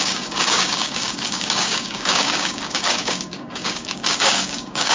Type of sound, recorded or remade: remade